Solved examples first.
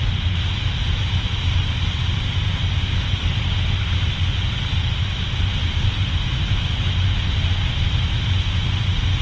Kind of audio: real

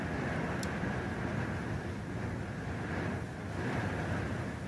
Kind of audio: real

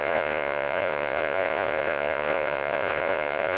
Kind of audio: fake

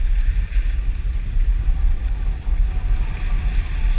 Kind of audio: real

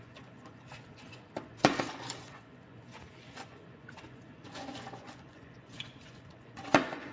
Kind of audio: fake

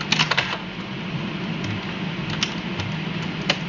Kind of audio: real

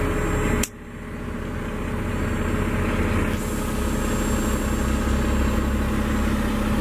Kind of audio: real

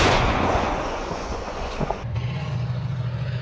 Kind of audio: fake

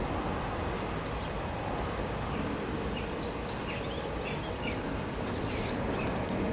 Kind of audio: real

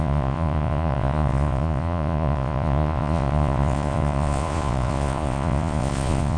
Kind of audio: fake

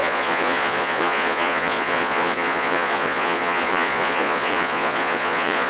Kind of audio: fake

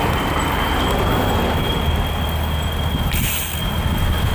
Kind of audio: real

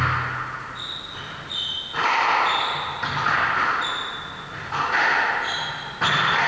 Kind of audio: real